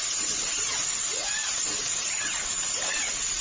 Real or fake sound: fake